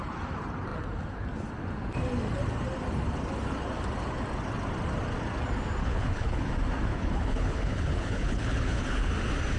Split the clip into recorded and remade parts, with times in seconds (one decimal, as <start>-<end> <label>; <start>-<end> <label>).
0.0-5.8 recorded; 5.8-6.5 remade; 6.5-6.9 recorded; 6.9-9.1 remade; 9.1-9.6 recorded

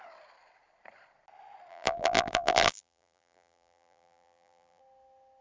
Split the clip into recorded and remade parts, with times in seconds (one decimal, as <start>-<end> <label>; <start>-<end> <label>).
0.0-1.7 recorded; 1.7-4.8 remade; 4.8-5.4 recorded

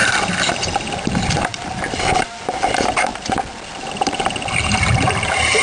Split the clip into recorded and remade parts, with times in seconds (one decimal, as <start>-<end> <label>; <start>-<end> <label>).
0.0-5.6 remade

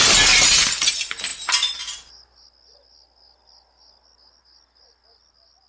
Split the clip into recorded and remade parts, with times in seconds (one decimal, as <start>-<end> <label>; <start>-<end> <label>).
0.0-5.7 recorded

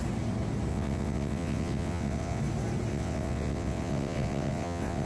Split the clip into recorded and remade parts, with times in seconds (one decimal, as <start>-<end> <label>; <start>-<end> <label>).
0.0-0.7 recorded; 0.7-2.4 remade; 2.4-2.9 recorded; 2.9-5.1 remade

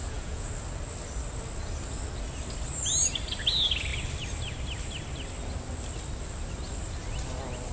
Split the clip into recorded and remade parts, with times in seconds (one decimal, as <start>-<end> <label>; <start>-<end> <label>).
0.0-0.5 remade; 0.5-7.7 recorded